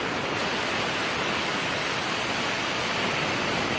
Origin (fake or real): real